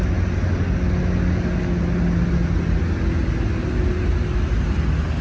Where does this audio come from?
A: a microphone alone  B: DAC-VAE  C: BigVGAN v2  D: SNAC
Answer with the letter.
A